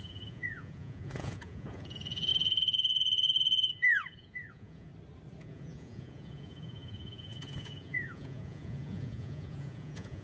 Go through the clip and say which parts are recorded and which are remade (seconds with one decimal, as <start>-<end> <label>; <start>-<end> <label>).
0.0-4.9 remade; 4.9-5.4 recorded; 5.4-10.2 remade